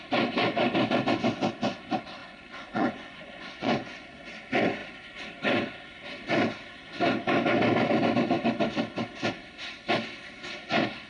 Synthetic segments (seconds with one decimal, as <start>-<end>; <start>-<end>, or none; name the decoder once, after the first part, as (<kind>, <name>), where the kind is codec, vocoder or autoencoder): 2.2-4.2 (vocoder, Vocos)